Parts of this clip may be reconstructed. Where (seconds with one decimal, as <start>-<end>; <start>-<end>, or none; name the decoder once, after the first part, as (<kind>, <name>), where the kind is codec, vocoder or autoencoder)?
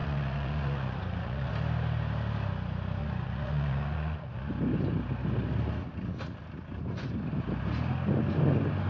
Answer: 0.0-1.5 (vocoder, Vocos); 3.0-4.5